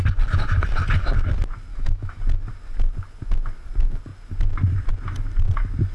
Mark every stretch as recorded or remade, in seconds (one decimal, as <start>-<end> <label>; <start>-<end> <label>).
0.0-1.7 recorded; 1.7-2.2 remade; 2.2-5.9 recorded